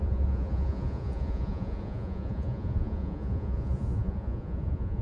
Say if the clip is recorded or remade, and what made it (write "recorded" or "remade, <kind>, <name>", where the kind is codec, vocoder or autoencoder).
remade, vocoder, Vocos